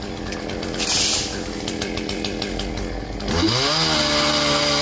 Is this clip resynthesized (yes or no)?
no